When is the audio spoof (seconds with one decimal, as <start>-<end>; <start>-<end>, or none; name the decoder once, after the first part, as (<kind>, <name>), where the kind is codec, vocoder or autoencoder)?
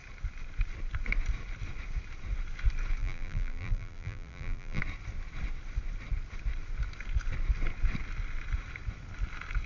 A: 3.0-4.8 (vocoder, BigVGAN v2)